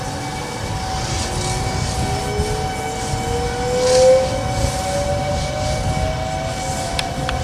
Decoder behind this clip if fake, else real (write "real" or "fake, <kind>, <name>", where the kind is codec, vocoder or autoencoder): real